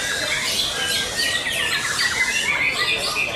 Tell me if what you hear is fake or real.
real